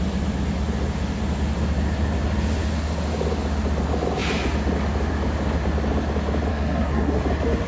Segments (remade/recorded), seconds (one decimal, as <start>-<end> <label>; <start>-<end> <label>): 0.0-6.5 recorded; 6.5-7.2 remade; 7.2-7.7 recorded